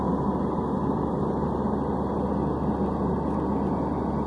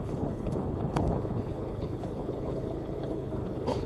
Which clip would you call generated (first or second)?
second